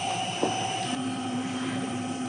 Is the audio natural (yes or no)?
no